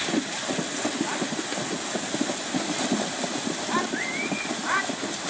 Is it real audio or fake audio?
real